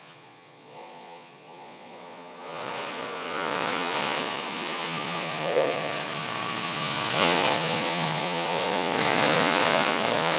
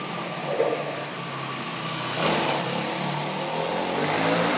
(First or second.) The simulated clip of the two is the first